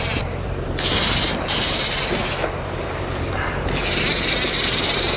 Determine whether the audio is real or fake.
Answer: fake